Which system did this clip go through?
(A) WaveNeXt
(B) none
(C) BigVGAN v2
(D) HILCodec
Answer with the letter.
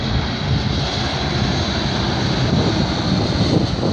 B